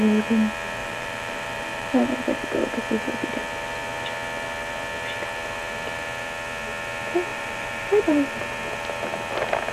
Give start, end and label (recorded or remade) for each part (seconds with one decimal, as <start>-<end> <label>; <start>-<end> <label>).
0.0-0.8 recorded; 0.8-2.8 remade; 2.8-7.3 recorded; 7.3-8.4 remade; 8.4-9.7 recorded